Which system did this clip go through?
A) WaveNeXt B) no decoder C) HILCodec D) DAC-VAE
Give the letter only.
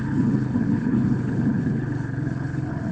C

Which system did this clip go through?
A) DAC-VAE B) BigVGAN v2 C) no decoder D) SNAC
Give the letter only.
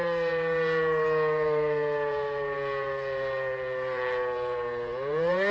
B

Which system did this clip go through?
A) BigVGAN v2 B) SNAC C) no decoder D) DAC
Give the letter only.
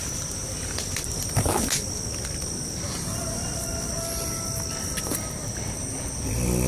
C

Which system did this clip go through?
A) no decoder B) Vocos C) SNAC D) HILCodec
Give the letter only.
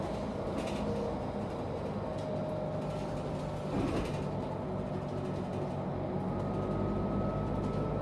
A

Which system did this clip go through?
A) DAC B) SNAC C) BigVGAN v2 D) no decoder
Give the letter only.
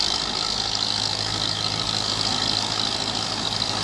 A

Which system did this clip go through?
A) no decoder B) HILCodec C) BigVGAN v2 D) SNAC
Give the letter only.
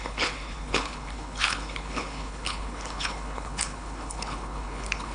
B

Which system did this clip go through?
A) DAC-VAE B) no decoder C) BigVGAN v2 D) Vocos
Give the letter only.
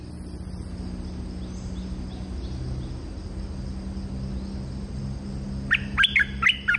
B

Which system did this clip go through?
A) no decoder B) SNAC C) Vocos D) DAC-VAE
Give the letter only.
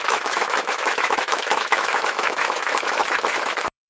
D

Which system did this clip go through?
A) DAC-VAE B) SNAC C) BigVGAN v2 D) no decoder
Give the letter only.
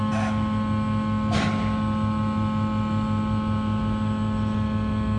D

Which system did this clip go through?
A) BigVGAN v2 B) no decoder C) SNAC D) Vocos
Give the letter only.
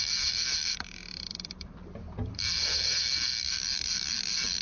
A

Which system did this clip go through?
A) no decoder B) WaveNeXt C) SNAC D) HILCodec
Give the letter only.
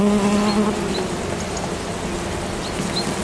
A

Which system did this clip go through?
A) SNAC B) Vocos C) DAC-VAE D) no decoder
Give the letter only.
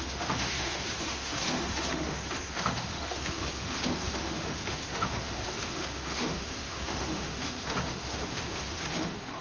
C